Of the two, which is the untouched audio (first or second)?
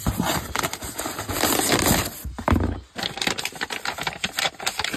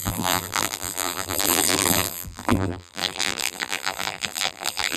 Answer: first